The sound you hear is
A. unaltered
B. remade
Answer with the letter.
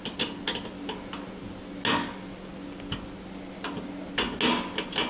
A